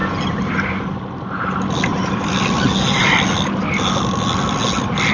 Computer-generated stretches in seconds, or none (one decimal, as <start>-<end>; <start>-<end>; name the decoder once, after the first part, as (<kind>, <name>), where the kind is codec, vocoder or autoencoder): 1.9-3.6 (vocoder, BigVGAN v2)